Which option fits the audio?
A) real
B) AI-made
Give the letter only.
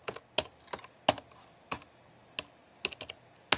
A